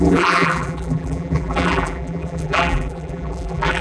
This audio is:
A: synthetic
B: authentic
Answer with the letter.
A